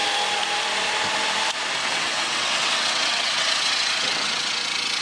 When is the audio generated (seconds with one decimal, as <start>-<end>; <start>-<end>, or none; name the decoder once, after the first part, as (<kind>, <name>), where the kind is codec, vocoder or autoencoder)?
1.8-5.0 (vocoder, WaveNeXt)